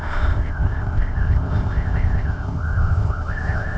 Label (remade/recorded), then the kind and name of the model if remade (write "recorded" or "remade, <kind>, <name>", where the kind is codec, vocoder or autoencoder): remade, codec, ZipCodec